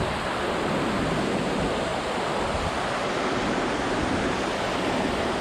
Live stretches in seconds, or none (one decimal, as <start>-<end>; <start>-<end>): 0.0-5.4